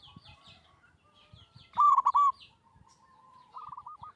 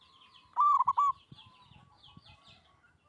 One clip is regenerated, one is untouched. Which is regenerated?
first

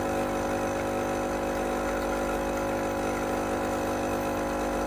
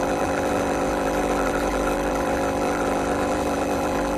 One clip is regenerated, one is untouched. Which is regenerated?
second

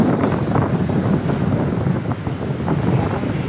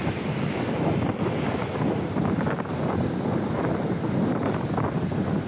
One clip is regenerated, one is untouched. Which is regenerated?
second